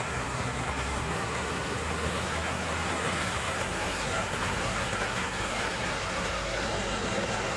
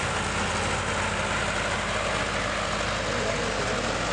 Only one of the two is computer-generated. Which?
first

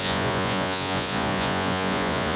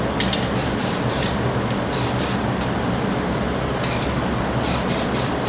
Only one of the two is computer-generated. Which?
first